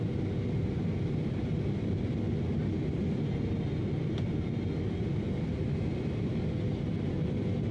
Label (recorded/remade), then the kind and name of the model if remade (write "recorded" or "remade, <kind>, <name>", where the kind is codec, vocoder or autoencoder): recorded